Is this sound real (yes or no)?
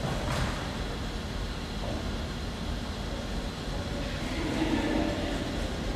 yes